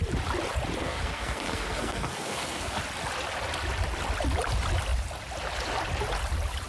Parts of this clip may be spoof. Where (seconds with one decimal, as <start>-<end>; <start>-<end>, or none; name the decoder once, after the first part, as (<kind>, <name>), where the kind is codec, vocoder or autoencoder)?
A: 0.8-2.8 (codec, SNAC)